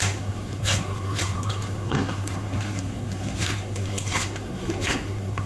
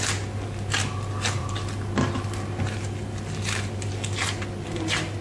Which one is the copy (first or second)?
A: first